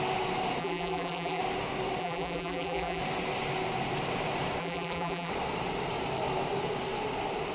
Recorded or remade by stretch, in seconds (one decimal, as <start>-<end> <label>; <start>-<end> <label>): 0.0-0.6 recorded; 0.6-1.4 remade; 1.4-2.0 recorded; 2.0-3.0 remade; 3.0-4.6 recorded; 4.6-5.3 remade; 5.3-7.5 recorded